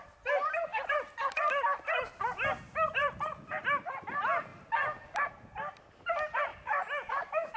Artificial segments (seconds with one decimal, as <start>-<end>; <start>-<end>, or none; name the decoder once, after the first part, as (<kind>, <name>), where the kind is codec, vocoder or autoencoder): 0.7-1.3 (vocoder, BigVGAN v2); 3.0-3.8; 6.5-7.1